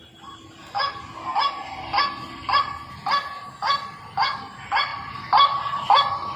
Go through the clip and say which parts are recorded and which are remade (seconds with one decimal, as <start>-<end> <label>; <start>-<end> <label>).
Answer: 0.0-6.4 recorded